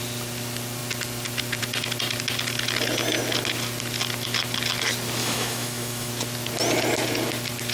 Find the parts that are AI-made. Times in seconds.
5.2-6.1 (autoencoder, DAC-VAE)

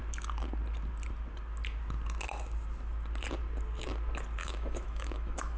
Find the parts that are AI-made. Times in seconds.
4.4-5.6 (autoencoder, DAC-VAE)

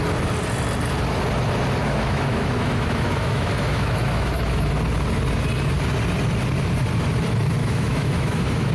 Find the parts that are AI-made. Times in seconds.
1.8-4.7 (autoencoder, DAC-VAE); 7.6-8.7

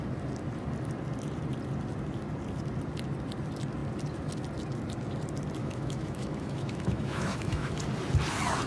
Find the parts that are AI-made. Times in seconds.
5.6-7.7 (autoencoder, DAC-VAE)